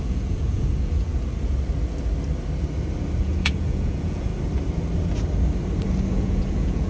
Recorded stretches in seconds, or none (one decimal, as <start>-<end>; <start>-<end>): 1.1-3.2; 4.3-6.1

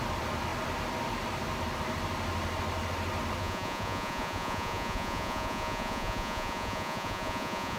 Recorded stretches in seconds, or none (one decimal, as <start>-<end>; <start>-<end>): 0.0-3.4

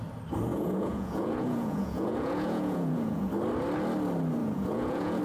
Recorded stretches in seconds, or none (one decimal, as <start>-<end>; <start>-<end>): 0.0-0.5; 3.3-4.4

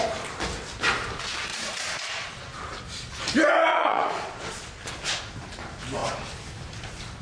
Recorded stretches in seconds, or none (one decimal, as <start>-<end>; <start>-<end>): 0.0-1.5; 2.4-3.7; 4.6-7.2

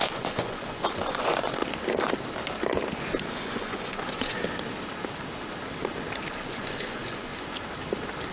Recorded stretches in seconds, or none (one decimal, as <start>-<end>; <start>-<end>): 1.6-3.3; 4.4-6.3; 7.3-8.3

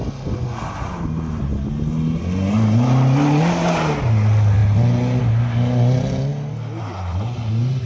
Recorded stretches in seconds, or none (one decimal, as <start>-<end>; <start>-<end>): 0.0-7.9

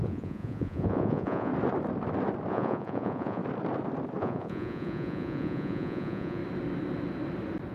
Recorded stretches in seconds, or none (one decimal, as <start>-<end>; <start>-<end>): 1.5-2.5; 3.4-4.2; 6.4-7.7

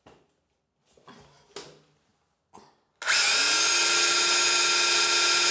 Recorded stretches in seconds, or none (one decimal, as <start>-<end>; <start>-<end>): 0.0-5.5